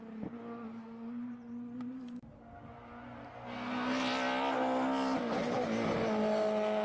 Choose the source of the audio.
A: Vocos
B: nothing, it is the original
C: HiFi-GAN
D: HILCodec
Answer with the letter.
B